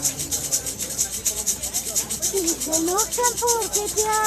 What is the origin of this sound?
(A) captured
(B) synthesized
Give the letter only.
B